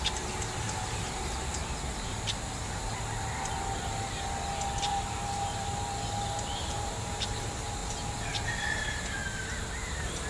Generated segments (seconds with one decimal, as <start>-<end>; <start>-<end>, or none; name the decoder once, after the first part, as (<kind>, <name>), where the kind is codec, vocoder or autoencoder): 0.0-1.5 (vocoder, BigVGAN v2); 4.8-5.7; 6.6-7.8; 8.5-9.2